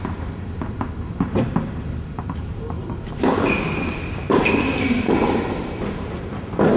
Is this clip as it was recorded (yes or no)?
yes